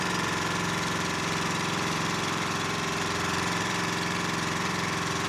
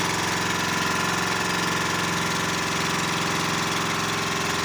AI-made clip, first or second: first